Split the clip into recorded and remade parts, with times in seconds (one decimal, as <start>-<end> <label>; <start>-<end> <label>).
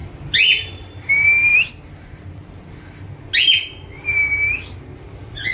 0.0-1.5 recorded; 1.5-3.0 remade; 3.0-5.5 recorded